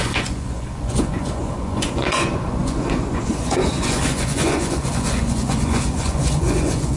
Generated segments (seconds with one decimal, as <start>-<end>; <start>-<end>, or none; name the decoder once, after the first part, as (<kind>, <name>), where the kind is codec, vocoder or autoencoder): 0.0-7.0 (vocoder, Vocos)